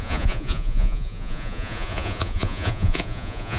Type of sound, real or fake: fake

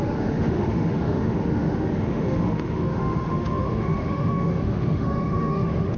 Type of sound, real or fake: fake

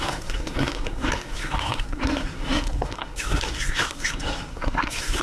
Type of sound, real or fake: fake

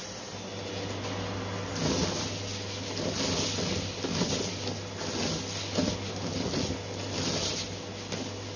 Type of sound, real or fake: real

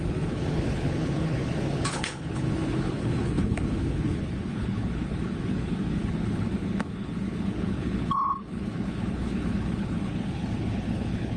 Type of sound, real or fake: fake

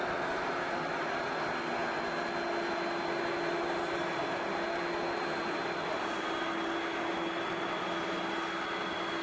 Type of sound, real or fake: real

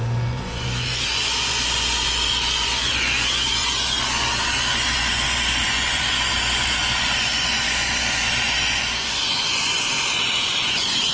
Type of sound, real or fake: fake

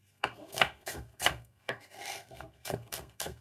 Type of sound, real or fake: fake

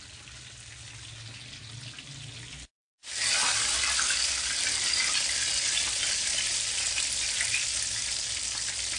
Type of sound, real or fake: real